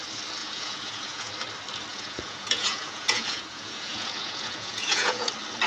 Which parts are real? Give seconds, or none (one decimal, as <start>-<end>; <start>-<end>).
0.0-0.4; 1.3-1.9; 5.3-5.7